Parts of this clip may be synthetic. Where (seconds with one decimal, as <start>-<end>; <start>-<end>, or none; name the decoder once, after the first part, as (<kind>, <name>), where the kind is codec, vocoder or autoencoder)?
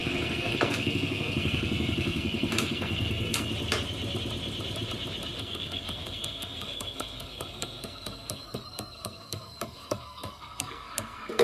0.0-3.5 (codec, SNAC); 5.4-11.4